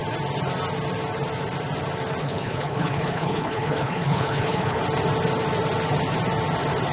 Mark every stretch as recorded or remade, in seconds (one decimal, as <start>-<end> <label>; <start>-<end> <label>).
0.0-2.2 recorded; 2.2-4.8 remade; 4.8-6.9 recorded